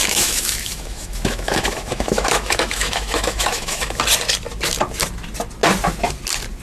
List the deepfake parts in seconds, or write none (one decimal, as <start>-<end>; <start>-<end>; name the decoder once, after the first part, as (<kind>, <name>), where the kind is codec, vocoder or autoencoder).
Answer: 0.0-4.0 (autoencoder, DAC-VAE)